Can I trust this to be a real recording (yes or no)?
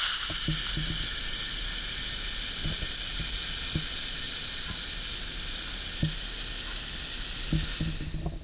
yes